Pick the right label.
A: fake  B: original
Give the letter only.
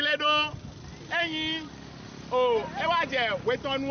B